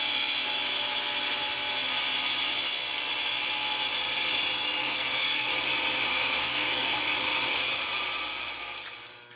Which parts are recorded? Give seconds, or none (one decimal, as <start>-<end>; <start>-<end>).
0.0-4.8; 5.5-6.1; 7.0-9.4